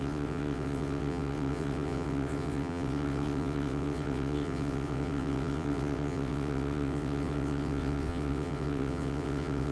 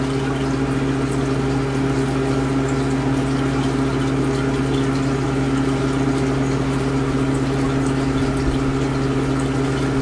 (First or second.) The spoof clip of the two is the first